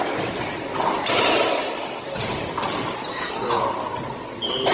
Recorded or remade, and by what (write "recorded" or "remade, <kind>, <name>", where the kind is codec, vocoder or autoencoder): recorded